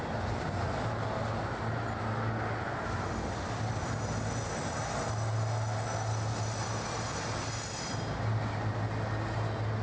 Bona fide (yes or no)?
yes